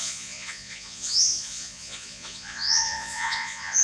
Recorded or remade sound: remade